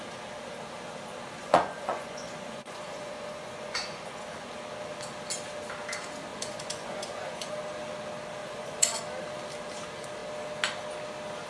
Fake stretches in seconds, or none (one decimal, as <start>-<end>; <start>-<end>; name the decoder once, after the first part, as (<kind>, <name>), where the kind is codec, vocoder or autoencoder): 1.4-4.5 (vocoder, Vocos); 6.3-7.5; 8.4-9.0